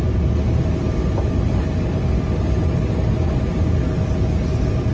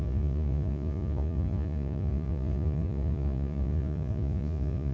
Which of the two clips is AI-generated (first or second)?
second